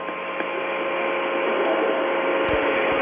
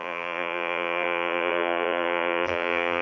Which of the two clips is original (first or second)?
first